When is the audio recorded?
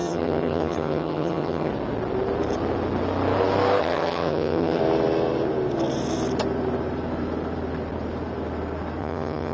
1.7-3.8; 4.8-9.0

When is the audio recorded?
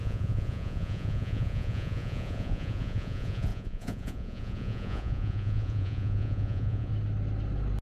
6.9-7.8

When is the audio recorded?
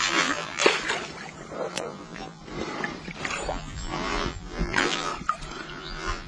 0.6-1.7; 2.4-3.5; 5.1-5.7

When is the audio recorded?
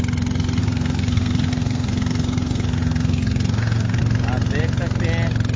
0.0-0.6; 4.0-5.6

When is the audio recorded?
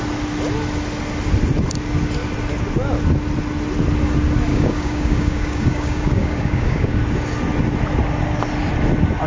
0.0-4.5; 7.0-9.3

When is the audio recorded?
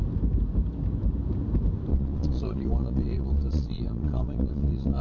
0.0-1.9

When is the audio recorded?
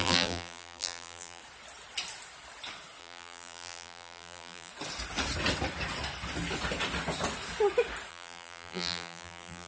1.4-3.0; 4.7-8.1